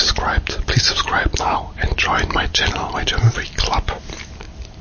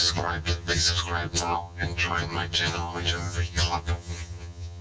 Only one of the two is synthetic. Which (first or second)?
second